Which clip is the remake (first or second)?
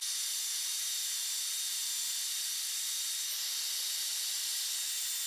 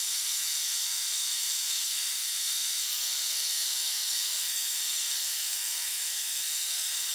second